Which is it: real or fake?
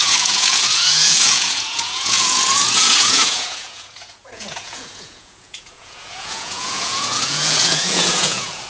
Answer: fake